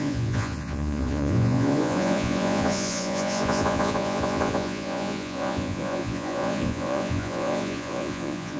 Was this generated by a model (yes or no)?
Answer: yes